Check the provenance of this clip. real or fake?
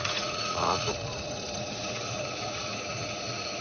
fake